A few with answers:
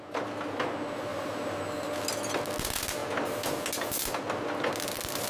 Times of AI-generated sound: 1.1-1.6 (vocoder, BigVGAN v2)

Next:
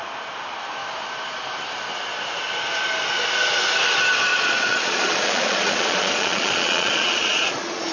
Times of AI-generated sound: 4.3-7.9 (vocoder, Vocos)